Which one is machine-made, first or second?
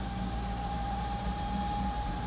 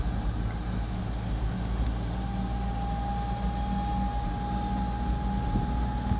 first